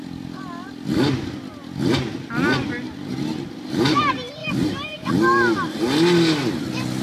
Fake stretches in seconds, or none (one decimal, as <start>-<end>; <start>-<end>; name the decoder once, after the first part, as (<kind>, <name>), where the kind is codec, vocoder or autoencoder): 3.1-4.0 (vocoder, BigVGAN v2); 4.4-5.1